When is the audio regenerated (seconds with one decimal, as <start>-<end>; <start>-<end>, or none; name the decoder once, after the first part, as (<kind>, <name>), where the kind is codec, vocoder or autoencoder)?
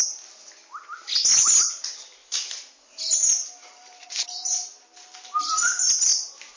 none